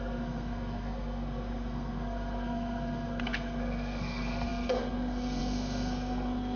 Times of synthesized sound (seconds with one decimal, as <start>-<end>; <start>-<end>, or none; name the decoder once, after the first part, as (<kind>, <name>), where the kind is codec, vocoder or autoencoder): 0.0-6.6 (codec, SNAC)